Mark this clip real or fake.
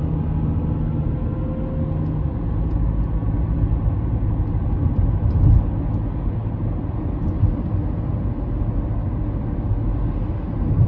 real